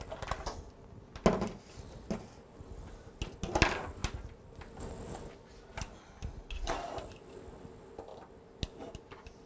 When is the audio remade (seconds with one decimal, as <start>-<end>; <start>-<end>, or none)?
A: none